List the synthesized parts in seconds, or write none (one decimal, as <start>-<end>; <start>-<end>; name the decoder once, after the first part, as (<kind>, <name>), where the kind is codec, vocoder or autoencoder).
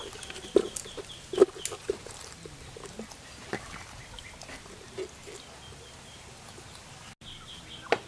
none